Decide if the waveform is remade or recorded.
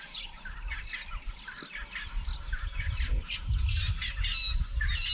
recorded